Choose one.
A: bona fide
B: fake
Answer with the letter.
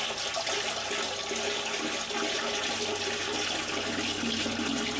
A